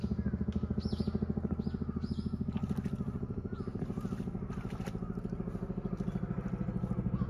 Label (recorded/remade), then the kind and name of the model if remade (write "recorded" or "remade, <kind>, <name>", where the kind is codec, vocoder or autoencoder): recorded